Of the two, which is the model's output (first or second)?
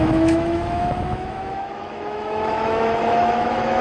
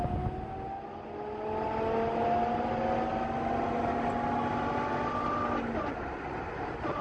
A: first